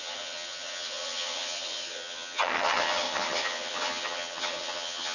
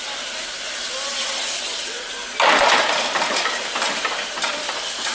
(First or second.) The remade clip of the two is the first